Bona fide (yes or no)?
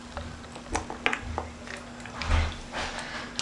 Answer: yes